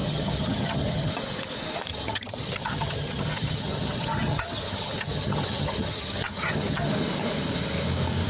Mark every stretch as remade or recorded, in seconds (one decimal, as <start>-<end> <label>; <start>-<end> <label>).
0.0-1.1 remade; 1.1-1.9 recorded; 1.9-6.9 remade; 6.9-8.3 recorded